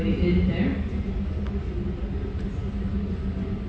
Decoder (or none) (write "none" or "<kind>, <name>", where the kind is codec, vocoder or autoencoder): none